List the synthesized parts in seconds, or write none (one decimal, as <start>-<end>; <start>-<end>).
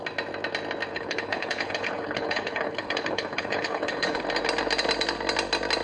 0.9-4.2